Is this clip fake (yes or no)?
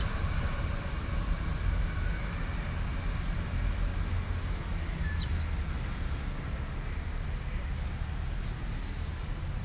no